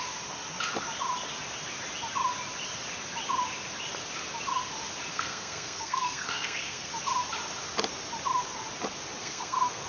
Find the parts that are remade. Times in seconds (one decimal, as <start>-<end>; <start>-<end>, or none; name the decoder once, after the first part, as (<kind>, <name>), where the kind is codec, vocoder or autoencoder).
5.1-6.9 (codec, SNAC); 9.2-9.9